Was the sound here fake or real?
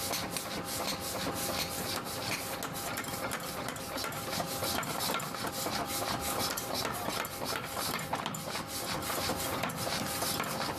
real